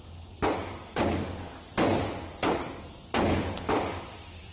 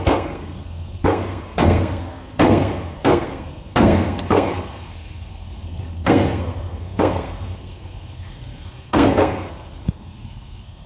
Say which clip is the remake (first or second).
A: second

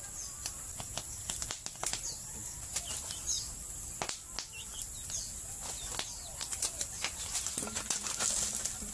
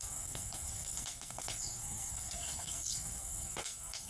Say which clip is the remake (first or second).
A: second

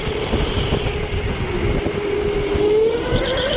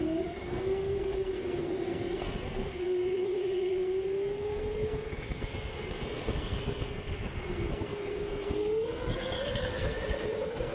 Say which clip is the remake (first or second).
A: second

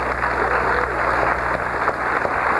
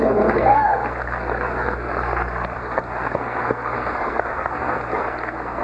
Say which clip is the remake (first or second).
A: second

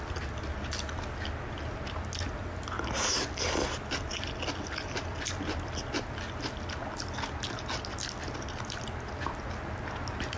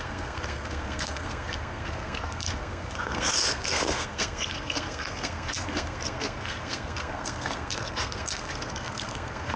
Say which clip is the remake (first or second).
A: second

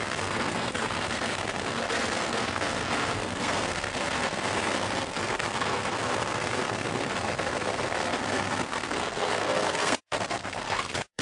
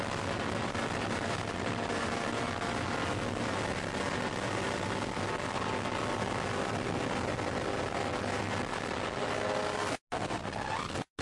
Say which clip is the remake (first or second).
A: first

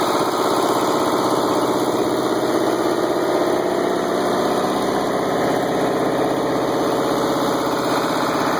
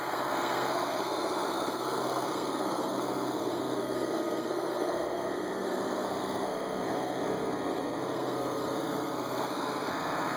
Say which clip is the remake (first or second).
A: second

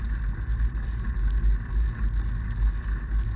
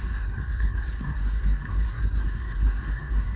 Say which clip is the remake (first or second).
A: second